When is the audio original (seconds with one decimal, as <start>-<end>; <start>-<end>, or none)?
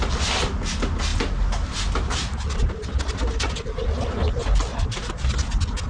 0.0-4.7; 5.3-5.9